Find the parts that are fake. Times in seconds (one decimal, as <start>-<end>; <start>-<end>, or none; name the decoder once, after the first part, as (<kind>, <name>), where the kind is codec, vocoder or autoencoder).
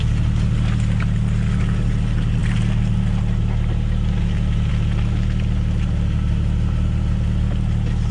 none